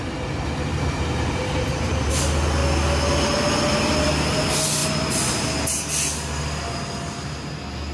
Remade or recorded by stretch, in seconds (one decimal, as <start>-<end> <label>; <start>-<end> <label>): 0.0-0.7 recorded; 0.7-2.1 remade; 2.1-7.9 recorded